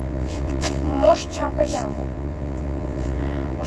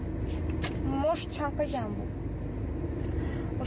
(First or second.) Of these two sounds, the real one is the second